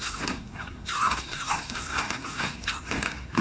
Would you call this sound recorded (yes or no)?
no